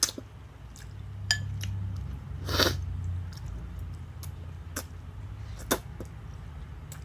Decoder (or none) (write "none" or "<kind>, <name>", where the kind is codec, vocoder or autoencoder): none